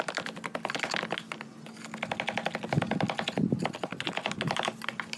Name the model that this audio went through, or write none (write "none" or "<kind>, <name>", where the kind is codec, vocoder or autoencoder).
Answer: none